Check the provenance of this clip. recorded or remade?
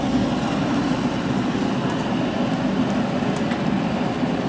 recorded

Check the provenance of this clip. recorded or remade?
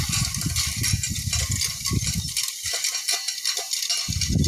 recorded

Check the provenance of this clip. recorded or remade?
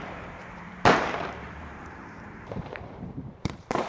remade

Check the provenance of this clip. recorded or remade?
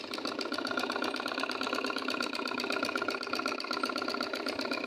remade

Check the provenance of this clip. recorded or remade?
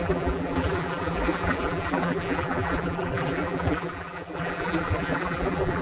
remade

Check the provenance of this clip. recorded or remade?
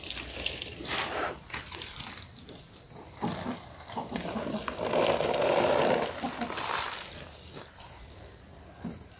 recorded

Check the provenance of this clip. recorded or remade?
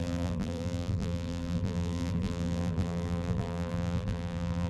remade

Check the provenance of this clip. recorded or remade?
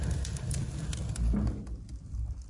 recorded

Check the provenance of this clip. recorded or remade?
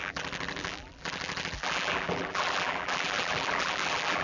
remade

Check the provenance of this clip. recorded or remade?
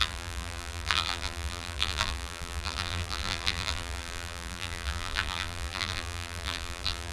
remade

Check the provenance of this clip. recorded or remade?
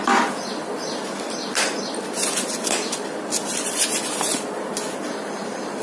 recorded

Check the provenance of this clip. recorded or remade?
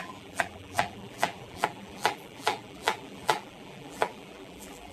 remade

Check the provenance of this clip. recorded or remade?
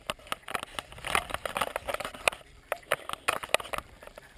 recorded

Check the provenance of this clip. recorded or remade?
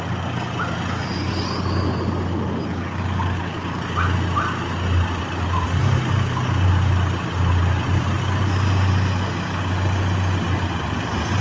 recorded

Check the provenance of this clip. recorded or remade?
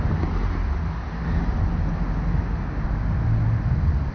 recorded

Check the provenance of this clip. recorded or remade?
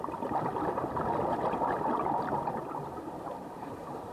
remade